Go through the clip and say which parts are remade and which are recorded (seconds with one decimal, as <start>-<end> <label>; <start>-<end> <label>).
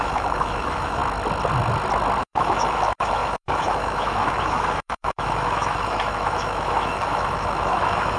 0.0-1.0 remade; 1.0-2.2 recorded; 2.2-8.2 remade